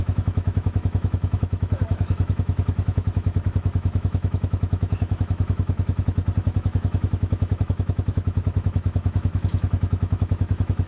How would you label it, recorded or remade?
remade